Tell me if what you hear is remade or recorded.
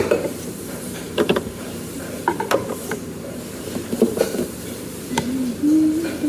remade